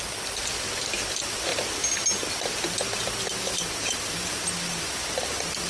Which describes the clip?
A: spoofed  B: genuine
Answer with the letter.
B